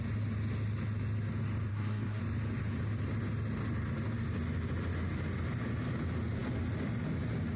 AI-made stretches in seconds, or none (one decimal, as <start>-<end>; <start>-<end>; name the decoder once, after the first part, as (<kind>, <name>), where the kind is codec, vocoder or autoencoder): 1.7-2.2 (codec, SNAC)